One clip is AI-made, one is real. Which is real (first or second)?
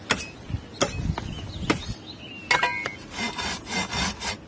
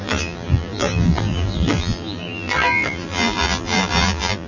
first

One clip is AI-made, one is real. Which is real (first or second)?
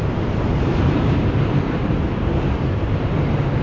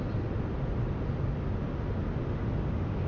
second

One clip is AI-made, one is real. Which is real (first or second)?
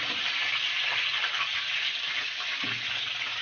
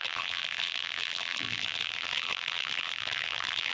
first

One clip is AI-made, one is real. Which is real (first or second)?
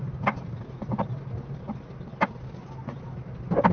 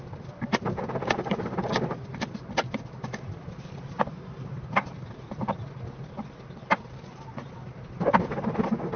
first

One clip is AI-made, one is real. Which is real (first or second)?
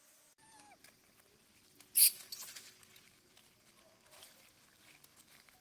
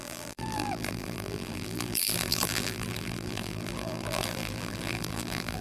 first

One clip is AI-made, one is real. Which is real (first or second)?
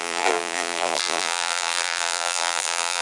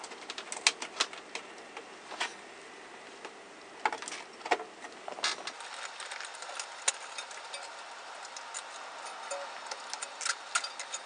second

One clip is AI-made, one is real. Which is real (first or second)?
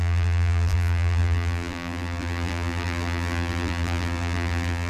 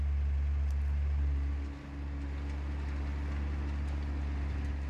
second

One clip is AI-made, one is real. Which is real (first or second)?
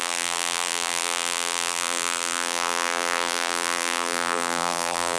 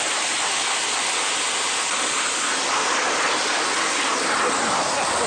second